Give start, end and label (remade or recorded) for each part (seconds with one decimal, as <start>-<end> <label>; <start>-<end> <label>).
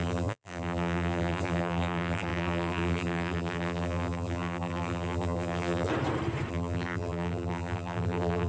0.0-5.9 remade; 5.9-6.5 recorded; 6.5-8.5 remade